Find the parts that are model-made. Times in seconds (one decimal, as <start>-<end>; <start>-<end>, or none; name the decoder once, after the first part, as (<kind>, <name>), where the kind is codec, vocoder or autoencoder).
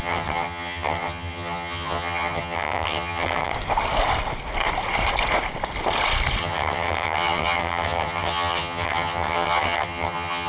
0.0-3.5 (vocoder, HiFi-GAN); 6.4-10.5